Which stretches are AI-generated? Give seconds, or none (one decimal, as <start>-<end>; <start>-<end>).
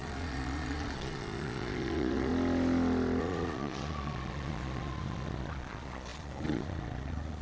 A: 0.0-2.3; 3.2-7.4